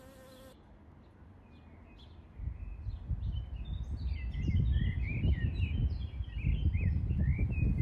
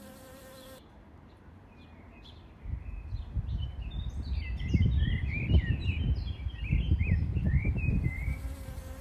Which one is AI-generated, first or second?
second